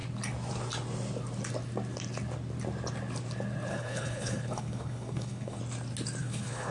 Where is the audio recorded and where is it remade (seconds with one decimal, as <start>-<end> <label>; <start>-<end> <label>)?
0.0-3.7 recorded; 3.7-5.6 remade; 5.6-6.2 recorded; 6.2-6.7 remade